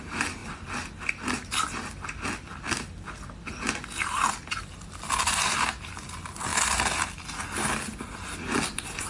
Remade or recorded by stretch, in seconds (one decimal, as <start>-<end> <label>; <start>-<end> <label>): 0.0-9.1 recorded